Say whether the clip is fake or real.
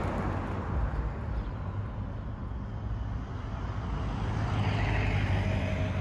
real